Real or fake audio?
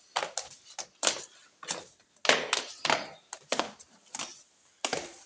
real